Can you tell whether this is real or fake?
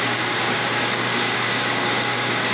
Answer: fake